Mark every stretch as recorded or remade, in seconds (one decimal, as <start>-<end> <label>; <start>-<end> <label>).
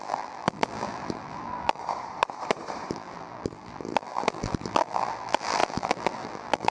0.0-1.8 remade; 1.8-2.9 recorded; 2.9-6.7 remade